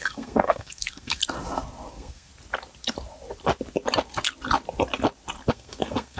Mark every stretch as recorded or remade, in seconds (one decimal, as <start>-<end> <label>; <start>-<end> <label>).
0.0-1.2 remade; 1.2-1.9 recorded; 1.9-2.3 remade; 2.3-5.5 recorded; 5.5-6.2 remade